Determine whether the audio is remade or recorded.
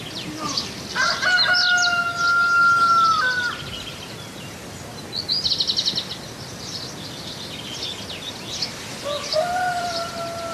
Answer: recorded